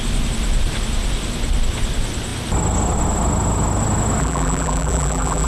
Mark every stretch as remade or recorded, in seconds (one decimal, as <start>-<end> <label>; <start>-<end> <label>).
0.0-4.2 recorded; 4.2-5.5 remade